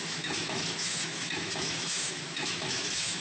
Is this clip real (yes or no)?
no